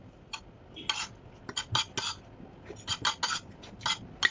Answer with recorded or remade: recorded